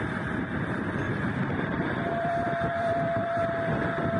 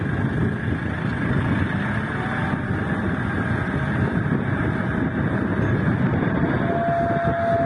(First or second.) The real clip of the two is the second